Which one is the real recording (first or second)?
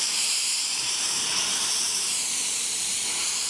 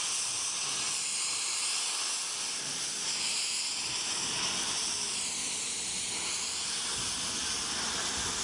second